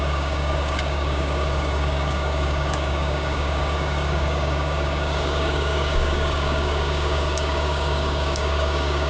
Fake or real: fake